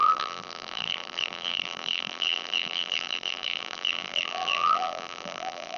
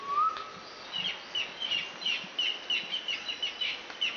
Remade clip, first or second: first